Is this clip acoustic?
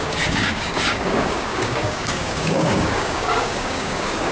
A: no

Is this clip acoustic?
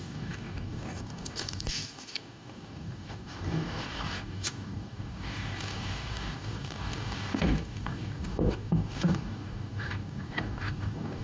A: no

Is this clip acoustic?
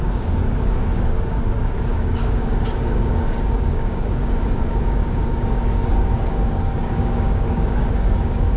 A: no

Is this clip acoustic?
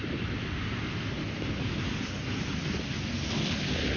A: yes